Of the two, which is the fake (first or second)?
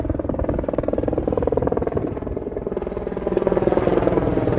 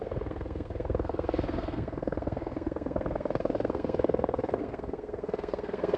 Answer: second